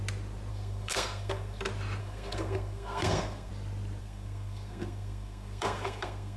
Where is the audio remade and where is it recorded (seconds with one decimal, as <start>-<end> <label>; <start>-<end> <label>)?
0.0-0.5 recorded; 0.5-1.6 remade; 1.6-2.0 recorded; 2.0-3.5 remade; 3.5-4.0 recorded; 4.0-6.4 remade